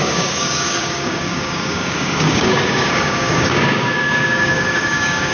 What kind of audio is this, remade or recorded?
remade